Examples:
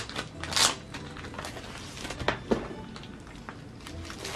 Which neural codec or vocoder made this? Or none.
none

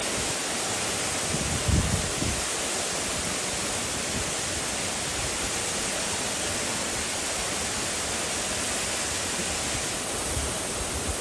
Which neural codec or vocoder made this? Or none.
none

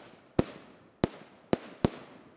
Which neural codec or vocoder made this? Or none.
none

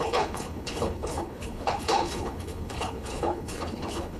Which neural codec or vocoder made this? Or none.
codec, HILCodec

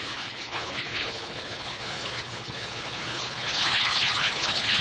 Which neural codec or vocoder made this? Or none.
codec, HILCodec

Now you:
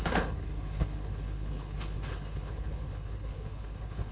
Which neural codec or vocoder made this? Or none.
codec, HILCodec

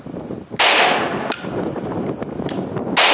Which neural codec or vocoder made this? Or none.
none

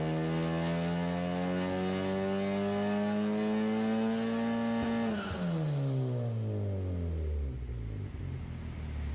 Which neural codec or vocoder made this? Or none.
none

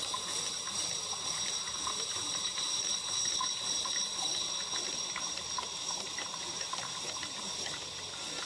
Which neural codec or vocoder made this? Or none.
none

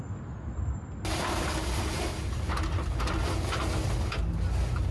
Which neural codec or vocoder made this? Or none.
none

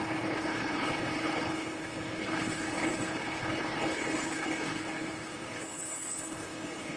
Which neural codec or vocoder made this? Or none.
codec, HILCodec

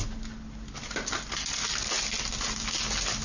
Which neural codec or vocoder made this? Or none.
none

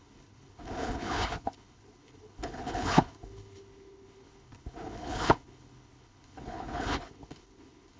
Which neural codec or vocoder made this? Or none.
codec, HILCodec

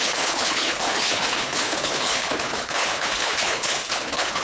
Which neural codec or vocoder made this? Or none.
codec, HILCodec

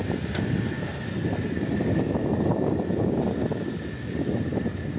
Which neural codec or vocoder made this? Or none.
none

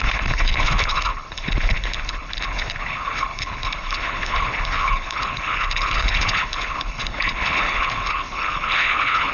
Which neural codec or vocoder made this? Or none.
codec, HILCodec